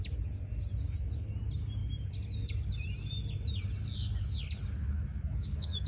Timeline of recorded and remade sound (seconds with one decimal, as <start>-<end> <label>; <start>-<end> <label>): 0.0-4.8 recorded; 4.8-5.9 remade